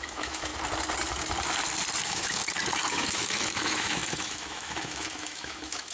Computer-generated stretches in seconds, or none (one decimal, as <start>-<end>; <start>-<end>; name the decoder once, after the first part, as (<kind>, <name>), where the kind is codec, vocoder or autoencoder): 0.0-0.5 (autoencoder, DAC-VAE); 2.0-2.4; 2.9-5.9